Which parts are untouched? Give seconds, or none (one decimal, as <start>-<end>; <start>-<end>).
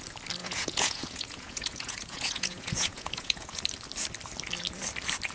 0.0-0.4; 3.6-5.3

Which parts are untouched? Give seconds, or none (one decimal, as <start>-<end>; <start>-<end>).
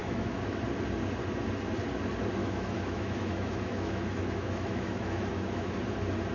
0.6-2.4; 5.7-6.3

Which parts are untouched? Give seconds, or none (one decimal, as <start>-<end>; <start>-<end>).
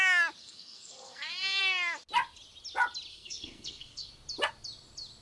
0.0-0.4; 1.6-3.1; 4.1-5.2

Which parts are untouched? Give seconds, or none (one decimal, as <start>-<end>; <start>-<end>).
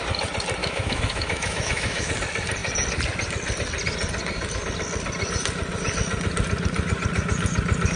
0.0-0.6; 2.1-8.0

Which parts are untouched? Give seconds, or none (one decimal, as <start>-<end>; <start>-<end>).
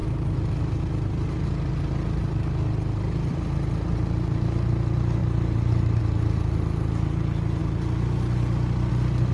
0.0-9.3